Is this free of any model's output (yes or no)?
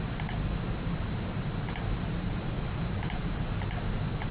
yes